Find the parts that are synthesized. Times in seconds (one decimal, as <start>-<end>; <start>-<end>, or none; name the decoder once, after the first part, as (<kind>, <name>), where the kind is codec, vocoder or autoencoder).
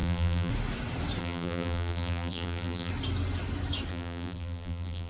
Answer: 0.0-0.5 (vocoder, BigVGAN v2); 1.2-2.9; 3.9-5.1